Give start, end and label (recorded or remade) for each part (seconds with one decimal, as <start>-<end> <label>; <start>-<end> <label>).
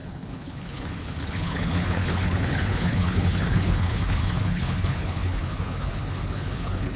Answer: 0.0-7.0 remade